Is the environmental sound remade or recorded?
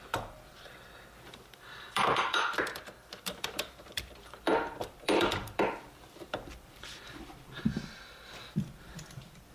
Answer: remade